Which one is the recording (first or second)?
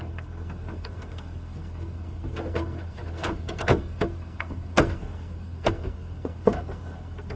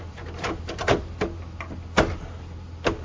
second